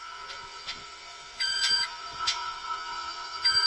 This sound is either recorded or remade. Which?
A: remade